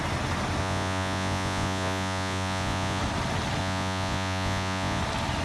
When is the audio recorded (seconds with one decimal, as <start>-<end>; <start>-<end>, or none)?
0.0-0.6; 3.0-3.6; 5.0-5.4